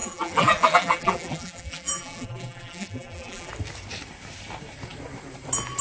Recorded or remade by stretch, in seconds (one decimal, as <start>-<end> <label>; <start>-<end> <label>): 0.0-3.5 remade; 3.5-5.8 recorded